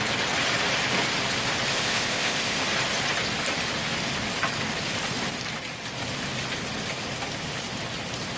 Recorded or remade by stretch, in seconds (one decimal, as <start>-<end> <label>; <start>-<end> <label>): 0.0-1.7 recorded; 1.7-2.6 remade; 2.6-8.4 recorded